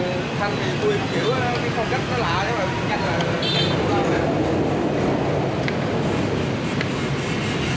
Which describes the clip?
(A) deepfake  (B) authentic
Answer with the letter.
B